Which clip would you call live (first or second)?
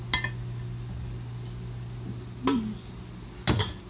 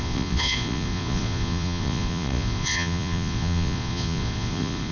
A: first